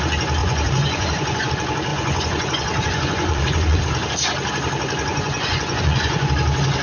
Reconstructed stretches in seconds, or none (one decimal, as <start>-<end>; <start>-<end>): 0.4-1.5; 1.9-3.8; 5.1-6.3